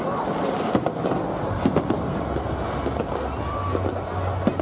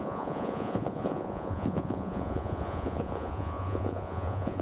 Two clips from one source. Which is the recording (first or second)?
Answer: first